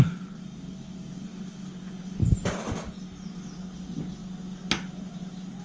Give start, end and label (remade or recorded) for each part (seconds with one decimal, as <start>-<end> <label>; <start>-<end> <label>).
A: 0.0-5.6 recorded